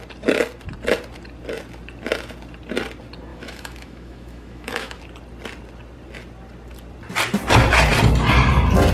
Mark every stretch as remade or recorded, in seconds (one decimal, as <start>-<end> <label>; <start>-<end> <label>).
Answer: 0.0-3.3 recorded; 3.3-5.0 remade; 5.0-8.9 recorded